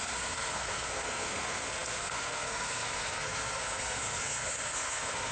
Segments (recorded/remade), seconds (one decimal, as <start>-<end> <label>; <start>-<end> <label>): 0.0-5.3 remade